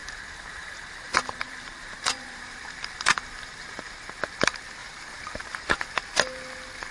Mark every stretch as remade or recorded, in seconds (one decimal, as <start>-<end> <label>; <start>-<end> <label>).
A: 0.0-4.1 remade; 4.1-4.8 recorded; 4.8-5.9 remade; 5.9-6.9 recorded

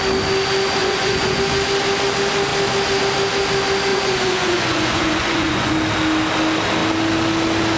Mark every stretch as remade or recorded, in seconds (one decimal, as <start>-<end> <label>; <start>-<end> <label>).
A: 0.0-0.8 recorded; 0.8-1.4 remade; 1.4-3.9 recorded; 3.9-5.7 remade; 5.7-7.8 recorded

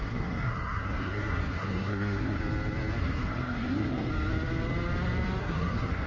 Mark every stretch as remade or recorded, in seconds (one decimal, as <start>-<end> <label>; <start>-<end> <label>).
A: 0.0-2.4 remade; 2.4-3.0 recorded; 3.0-4.1 remade; 4.1-5.4 recorded; 5.4-6.1 remade

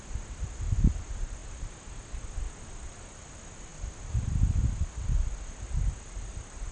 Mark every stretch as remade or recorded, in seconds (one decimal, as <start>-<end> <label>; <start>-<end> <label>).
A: 0.0-6.7 recorded

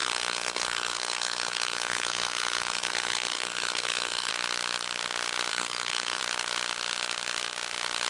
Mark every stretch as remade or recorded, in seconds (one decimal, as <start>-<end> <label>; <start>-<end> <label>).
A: 0.0-4.3 remade; 4.3-5.5 recorded; 5.5-6.2 remade; 6.2-8.1 recorded

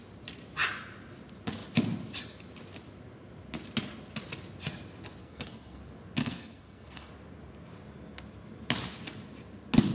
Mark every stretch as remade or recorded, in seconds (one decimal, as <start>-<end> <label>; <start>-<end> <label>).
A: 0.0-5.2 recorded; 5.2-5.8 remade; 5.8-6.2 recorded; 6.2-7.1 remade; 7.1-9.9 recorded